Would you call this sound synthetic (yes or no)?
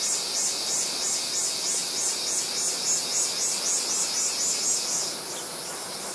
no